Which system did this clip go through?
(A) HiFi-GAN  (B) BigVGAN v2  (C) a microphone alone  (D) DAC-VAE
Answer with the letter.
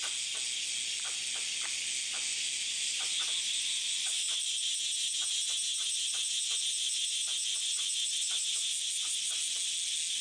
C